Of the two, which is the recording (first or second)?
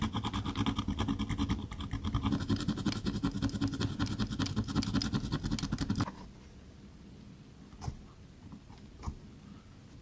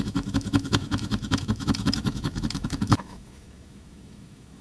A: first